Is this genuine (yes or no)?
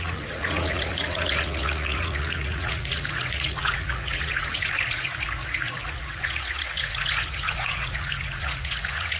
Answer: no